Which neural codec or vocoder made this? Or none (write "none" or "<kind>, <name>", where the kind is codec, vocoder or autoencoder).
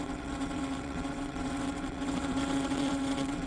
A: vocoder, WaveNeXt